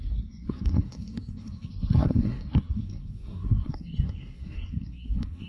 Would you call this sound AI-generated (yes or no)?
yes